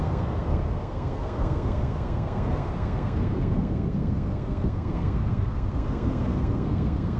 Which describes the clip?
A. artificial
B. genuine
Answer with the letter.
A